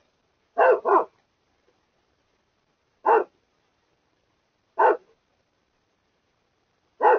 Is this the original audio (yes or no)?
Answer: no